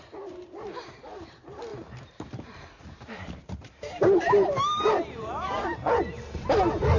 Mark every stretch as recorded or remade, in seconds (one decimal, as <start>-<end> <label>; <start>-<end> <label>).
0.0-1.7 recorded; 1.7-5.9 remade; 5.9-7.0 recorded